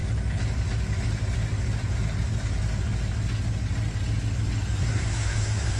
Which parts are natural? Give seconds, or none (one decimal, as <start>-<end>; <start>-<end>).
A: 0.0-4.8